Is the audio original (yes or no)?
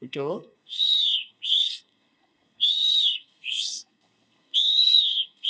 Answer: no